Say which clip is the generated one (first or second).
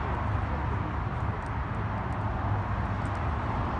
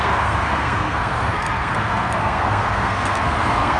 second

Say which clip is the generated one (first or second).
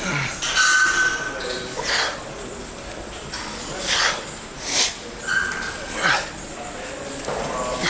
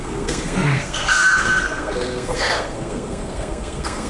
second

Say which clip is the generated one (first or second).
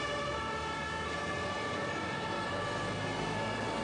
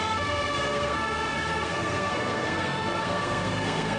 second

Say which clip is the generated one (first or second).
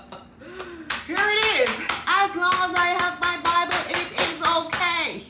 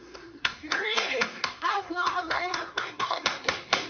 second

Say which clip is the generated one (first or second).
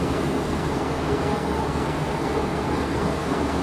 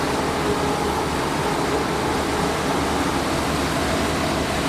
first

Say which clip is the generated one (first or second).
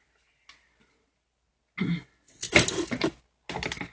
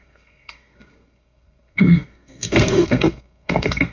second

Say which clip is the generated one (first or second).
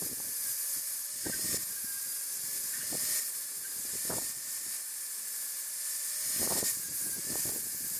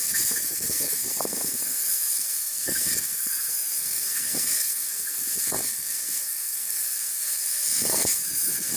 second